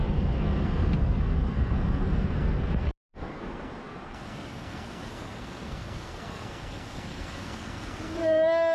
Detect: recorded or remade remade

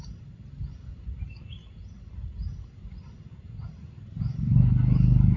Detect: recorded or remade recorded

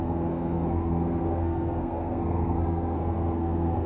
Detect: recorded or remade remade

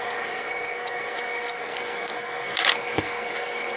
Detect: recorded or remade remade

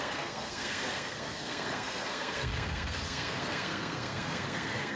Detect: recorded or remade remade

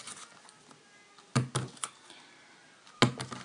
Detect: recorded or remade recorded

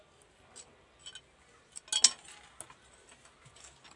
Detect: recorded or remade recorded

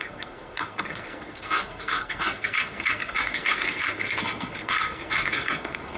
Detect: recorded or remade remade